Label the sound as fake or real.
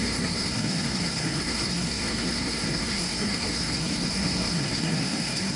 fake